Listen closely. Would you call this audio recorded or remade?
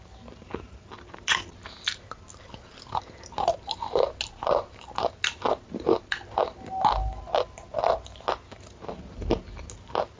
recorded